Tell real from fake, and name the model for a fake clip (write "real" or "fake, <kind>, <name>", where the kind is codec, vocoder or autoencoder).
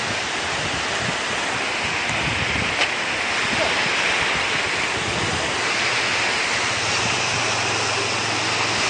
real